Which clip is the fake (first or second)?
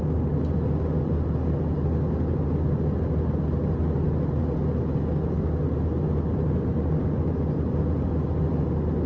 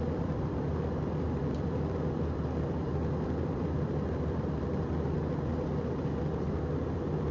second